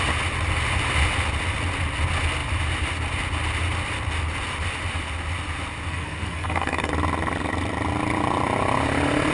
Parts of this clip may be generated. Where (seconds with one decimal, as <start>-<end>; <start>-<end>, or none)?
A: 5.9-6.9